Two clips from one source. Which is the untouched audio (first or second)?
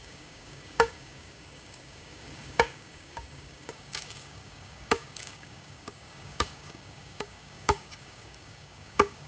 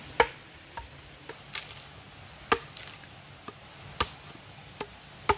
second